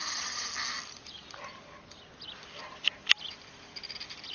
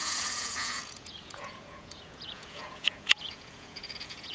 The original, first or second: first